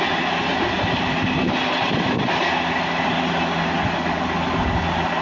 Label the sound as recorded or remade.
recorded